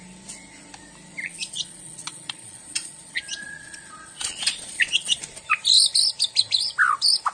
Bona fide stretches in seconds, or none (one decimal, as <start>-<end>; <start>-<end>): 0.0-1.2; 5.2-7.3

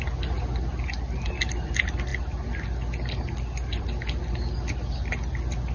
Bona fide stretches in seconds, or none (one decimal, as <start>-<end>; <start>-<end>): 0.0-5.7